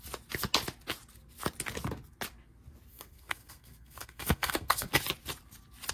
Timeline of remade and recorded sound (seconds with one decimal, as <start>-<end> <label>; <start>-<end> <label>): 0.0-2.9 recorded; 2.9-4.9 remade; 4.9-5.9 recorded